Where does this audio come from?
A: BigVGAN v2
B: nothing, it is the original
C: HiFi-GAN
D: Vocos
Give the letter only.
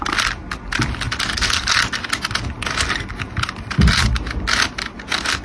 B